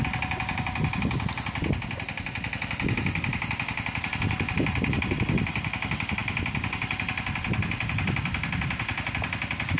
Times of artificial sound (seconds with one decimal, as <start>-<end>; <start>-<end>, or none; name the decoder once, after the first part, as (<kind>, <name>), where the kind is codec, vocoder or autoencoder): none